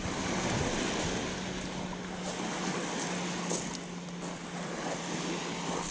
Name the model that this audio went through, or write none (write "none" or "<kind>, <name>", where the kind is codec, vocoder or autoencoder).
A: none